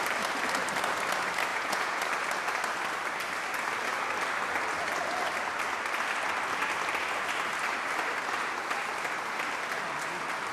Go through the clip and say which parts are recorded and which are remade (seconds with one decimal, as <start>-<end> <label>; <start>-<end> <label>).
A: 0.0-1.5 recorded; 1.5-2.0 remade; 2.0-10.5 recorded